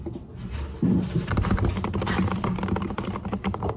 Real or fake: real